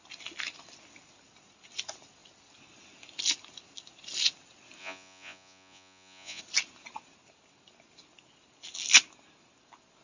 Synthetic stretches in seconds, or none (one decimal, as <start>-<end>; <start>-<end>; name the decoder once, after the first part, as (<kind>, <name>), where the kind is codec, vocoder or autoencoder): 4.8-6.4 (vocoder, Vocos)